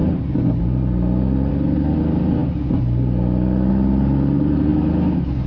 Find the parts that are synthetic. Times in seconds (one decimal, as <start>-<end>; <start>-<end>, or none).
1.5-2.4; 3.7-4.7